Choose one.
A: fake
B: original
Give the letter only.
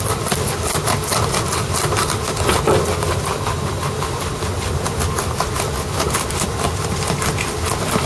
B